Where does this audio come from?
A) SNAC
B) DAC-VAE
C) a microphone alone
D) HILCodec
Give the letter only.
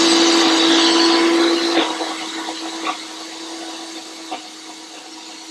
C